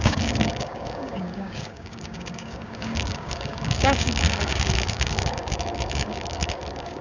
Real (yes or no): no